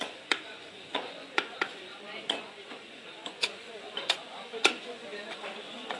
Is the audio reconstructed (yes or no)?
yes